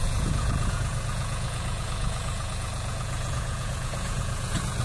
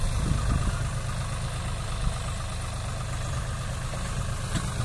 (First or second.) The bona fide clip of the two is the second